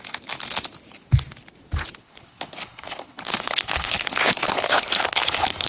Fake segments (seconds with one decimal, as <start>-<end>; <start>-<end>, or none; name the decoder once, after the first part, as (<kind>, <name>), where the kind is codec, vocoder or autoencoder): 2.0-5.7 (codec, HILCodec)